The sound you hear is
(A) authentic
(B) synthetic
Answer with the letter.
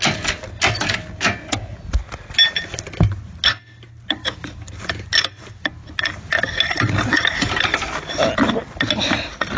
A